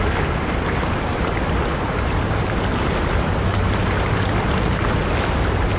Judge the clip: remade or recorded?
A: recorded